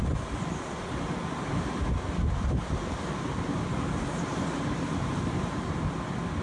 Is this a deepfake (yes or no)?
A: no